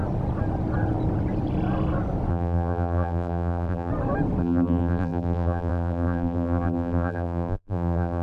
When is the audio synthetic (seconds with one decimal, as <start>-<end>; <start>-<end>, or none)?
2.3-3.9; 4.4-8.2